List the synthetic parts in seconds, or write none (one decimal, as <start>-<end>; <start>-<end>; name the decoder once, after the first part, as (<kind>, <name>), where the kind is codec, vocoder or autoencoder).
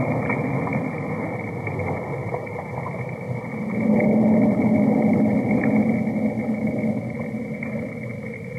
2.2-4.1 (vocoder, BigVGAN v2); 5.3-5.9